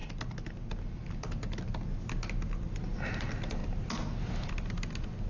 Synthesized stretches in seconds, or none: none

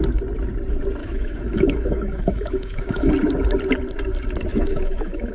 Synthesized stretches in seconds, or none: 1.0-3.1 (autoencoder, DAC-VAE); 4.5-5.3

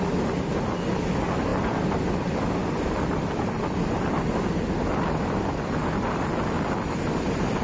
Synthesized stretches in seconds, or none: 1.5-2.1 (vocoder, BigVGAN v2)